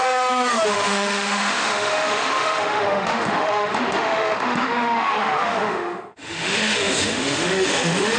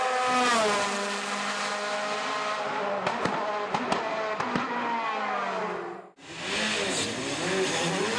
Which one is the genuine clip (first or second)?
second